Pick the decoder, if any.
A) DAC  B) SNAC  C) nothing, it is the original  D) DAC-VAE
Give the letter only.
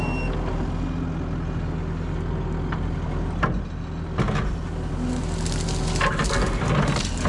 C